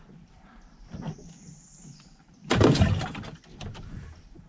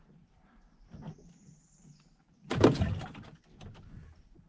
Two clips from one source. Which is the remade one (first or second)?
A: first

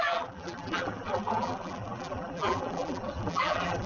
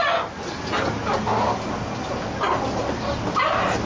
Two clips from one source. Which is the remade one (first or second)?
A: first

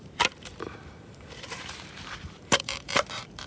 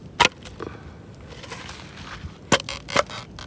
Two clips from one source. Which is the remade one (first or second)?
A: first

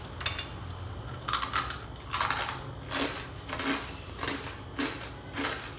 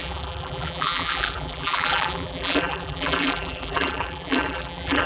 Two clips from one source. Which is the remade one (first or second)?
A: second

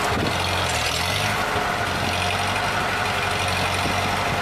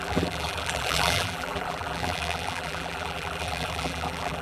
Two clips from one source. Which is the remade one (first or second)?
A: second